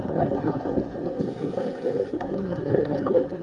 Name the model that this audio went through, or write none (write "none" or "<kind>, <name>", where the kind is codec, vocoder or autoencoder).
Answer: codec, SNAC